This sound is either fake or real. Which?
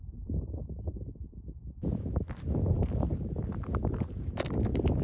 real